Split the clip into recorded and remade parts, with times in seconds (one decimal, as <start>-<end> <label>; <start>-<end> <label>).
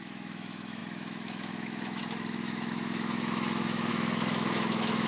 0.0-5.1 remade